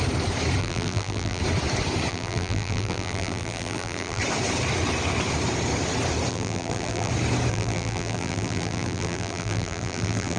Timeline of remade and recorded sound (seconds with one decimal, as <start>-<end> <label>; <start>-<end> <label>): 0.0-0.6 recorded; 0.6-1.4 remade; 1.4-2.1 recorded; 2.1-4.2 remade; 4.2-6.3 recorded; 6.3-7.1 remade; 7.1-7.5 recorded; 7.5-10.4 remade